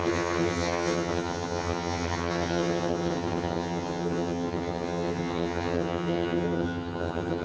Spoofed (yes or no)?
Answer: yes